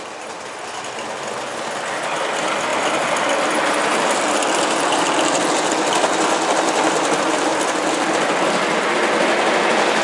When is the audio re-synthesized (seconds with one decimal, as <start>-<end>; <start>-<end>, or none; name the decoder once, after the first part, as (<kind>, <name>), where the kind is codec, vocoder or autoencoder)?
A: none